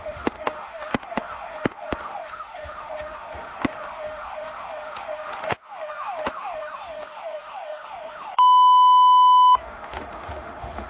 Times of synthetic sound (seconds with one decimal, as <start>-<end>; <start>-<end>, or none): 0.0-10.9